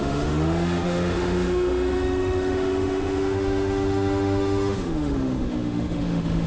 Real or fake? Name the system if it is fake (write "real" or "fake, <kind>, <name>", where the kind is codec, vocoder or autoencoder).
fake, autoencoder, DAC-VAE